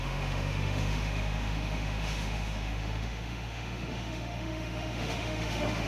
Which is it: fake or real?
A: fake